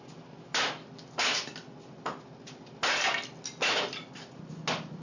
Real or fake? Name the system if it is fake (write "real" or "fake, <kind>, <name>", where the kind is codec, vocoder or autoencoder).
real